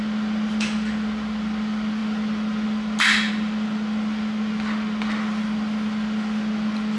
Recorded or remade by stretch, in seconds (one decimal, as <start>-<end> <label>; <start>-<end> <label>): 0.0-7.0 recorded